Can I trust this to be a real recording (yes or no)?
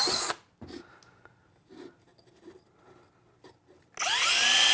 yes